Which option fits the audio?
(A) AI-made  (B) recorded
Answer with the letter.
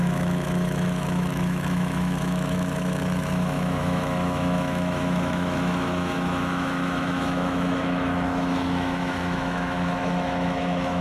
A